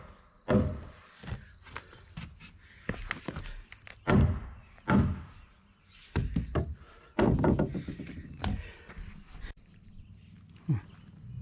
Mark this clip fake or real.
real